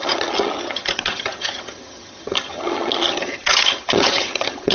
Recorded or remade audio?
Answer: remade